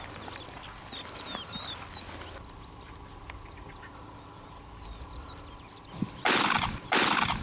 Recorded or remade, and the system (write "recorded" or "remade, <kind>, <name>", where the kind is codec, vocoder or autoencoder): recorded